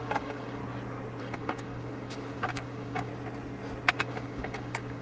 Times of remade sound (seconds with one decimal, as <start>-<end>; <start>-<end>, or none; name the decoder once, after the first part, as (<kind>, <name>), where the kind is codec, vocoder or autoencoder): 0.0-0.6 (codec, DAC); 1.2-3.1; 3.9-5.0